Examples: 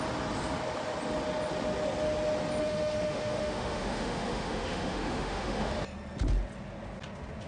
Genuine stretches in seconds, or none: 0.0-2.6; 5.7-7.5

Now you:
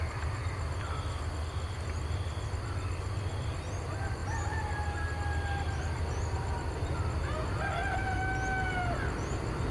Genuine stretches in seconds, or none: 0.0-9.7